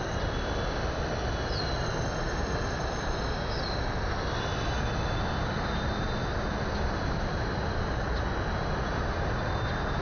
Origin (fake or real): real